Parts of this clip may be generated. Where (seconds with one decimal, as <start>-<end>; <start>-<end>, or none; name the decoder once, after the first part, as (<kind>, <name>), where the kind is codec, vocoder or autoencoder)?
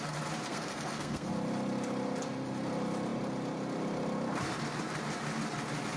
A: 0.5-1.3 (codec, SNAC)